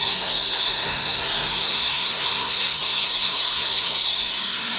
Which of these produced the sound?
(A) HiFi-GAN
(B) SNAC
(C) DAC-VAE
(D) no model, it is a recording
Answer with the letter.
B